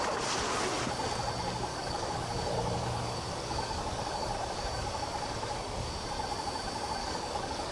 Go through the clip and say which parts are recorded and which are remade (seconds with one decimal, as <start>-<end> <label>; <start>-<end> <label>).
0.0-1.7 recorded; 1.7-5.9 remade; 5.9-7.0 recorded; 7.0-7.7 remade